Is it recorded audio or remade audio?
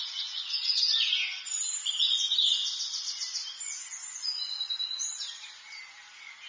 recorded